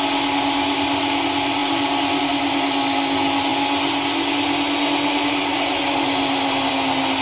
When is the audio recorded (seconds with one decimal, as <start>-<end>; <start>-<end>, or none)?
0.0-7.2